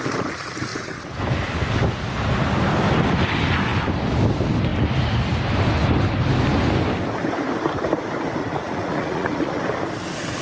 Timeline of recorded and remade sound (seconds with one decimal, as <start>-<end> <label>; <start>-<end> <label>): 0.0-8.4 recorded; 8.4-9.6 remade; 9.6-10.4 recorded